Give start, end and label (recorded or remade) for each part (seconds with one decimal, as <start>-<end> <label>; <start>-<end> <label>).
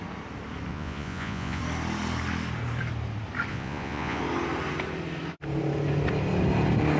0.0-0.7 recorded; 0.7-1.6 remade; 1.6-3.5 recorded; 3.5-4.2 remade; 4.2-7.0 recorded